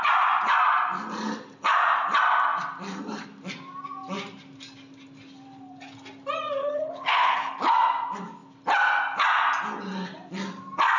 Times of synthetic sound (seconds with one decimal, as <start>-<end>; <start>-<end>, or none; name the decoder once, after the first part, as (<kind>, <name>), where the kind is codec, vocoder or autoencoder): 6.6-7.7 (codec, HILCodec)